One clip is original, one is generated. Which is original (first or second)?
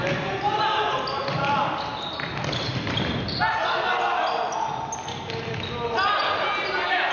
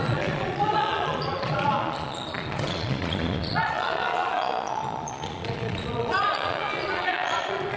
first